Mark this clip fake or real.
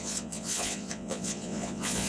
fake